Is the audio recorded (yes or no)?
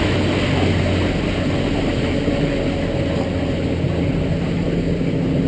yes